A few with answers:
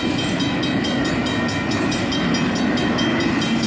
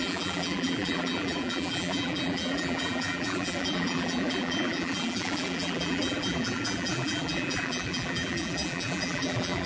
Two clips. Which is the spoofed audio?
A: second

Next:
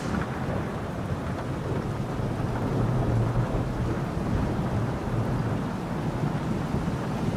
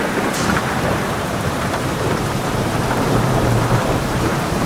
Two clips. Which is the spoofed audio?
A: second